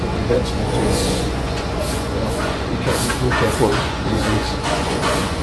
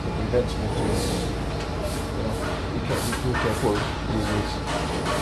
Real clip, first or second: second